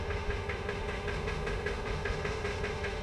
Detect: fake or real fake